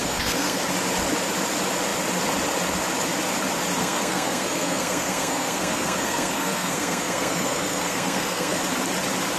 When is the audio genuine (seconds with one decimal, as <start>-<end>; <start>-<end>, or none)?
0.6-3.8; 8.6-9.4